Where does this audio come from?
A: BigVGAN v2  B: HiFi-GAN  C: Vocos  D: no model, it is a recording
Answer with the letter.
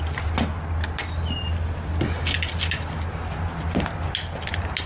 D